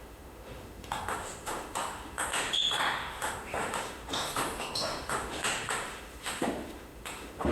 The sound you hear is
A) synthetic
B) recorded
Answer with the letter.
A